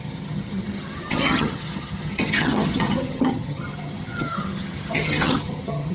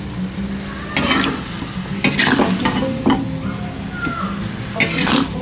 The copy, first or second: first